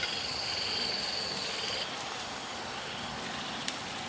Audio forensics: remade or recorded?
recorded